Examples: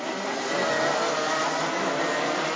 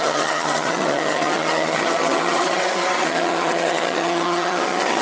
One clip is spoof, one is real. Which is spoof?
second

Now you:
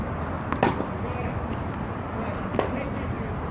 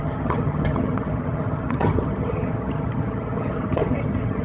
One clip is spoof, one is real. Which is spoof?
second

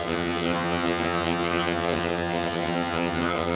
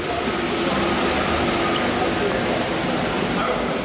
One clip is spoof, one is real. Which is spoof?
first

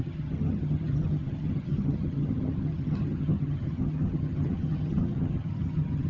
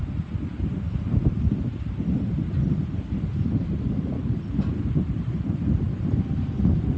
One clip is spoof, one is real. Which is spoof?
first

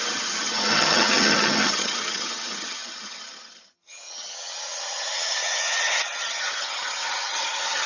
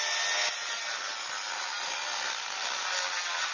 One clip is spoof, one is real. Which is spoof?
first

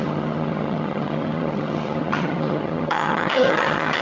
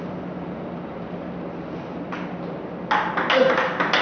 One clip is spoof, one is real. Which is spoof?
first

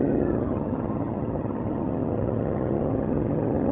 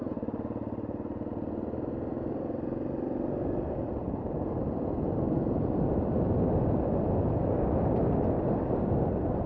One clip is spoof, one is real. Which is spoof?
first